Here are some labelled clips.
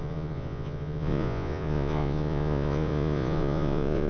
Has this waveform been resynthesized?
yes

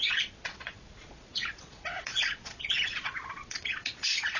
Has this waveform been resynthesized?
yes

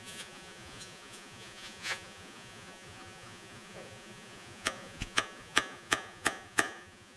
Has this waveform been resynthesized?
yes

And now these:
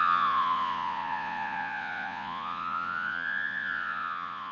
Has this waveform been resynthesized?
yes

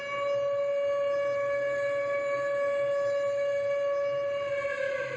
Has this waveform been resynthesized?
no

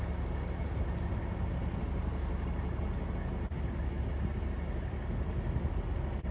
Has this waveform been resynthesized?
no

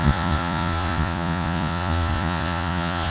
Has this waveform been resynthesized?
yes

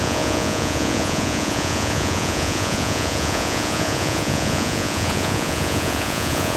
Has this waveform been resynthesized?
yes